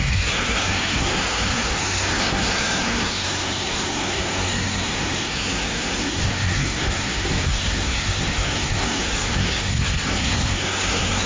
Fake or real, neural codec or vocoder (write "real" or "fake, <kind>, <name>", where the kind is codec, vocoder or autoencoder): fake, codec, SNAC